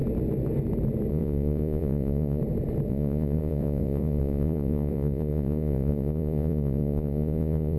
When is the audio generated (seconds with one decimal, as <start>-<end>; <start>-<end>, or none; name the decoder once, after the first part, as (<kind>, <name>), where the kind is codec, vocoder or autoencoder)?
1.1-2.4 (vocoder, Vocos); 2.9-7.8